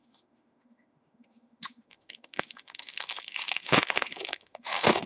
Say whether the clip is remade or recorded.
remade